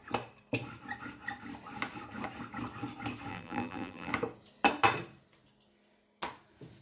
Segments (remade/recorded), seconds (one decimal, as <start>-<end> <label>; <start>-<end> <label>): 0.0-3.3 recorded; 3.3-4.1 remade; 4.1-6.8 recorded